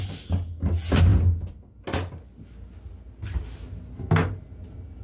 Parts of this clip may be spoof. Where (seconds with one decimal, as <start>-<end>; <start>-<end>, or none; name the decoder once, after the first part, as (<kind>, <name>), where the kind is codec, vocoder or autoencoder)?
none